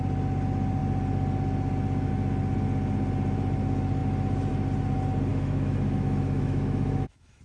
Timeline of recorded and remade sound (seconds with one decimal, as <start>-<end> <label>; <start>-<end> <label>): 0.0-5.3 recorded; 5.3-7.4 remade